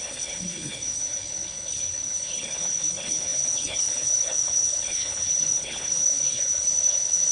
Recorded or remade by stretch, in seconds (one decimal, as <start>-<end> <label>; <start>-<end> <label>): 0.0-7.3 remade